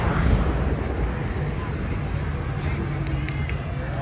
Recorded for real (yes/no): yes